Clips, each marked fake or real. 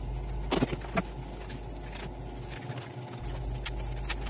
real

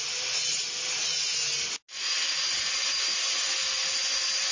real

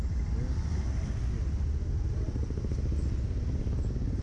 real